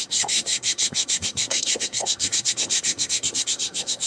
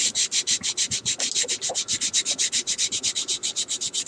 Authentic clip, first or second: second